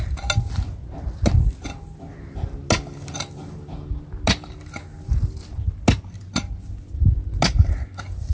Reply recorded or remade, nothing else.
recorded